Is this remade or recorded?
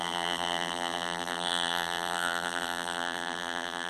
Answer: remade